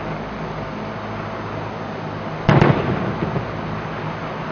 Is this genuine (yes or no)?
yes